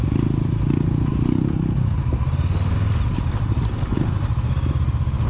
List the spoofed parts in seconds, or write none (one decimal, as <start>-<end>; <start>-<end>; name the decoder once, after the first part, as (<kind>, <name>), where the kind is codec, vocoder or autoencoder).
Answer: none